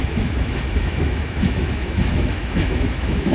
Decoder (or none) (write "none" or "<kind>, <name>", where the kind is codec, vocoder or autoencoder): autoencoder, DAC-VAE